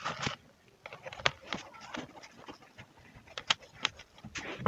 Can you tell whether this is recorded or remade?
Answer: recorded